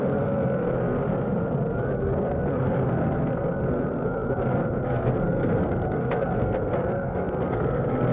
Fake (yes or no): yes